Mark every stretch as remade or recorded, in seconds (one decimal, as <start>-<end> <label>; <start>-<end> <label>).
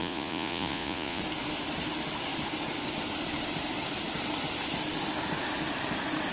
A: 0.0-1.2 remade; 1.2-6.3 recorded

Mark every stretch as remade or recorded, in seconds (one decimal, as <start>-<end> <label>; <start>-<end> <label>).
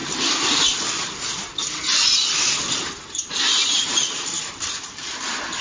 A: 0.0-5.6 remade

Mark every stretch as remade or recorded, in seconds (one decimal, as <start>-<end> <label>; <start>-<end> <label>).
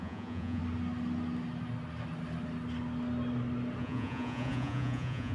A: 0.0-0.6 remade; 0.6-3.8 recorded; 3.8-5.3 remade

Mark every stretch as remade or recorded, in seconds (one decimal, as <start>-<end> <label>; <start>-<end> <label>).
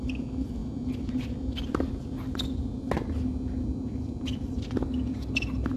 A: 0.0-5.8 recorded